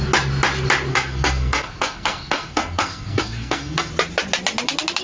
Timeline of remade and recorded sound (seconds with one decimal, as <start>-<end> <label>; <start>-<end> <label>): 0.0-0.9 recorded; 0.9-3.9 remade; 3.9-5.0 recorded